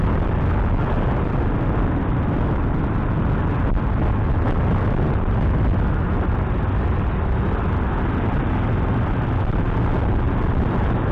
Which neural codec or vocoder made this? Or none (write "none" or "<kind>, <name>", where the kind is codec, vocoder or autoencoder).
none